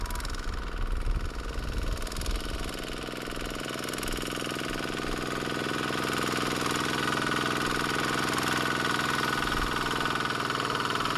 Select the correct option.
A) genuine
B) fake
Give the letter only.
A